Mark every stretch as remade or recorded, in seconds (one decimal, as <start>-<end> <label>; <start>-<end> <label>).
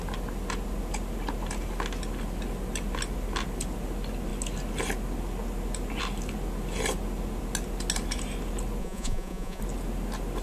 0.0-8.8 recorded; 8.8-9.6 remade; 9.6-10.4 recorded